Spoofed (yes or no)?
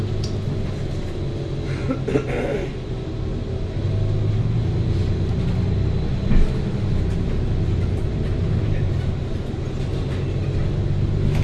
no